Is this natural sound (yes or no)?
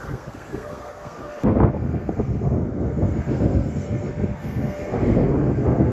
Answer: no